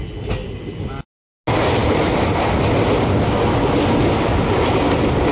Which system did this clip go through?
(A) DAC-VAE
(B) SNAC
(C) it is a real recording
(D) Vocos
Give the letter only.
C